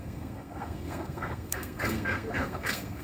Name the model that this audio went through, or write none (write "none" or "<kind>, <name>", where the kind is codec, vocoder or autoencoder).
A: codec, SNAC